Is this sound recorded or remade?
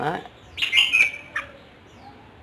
recorded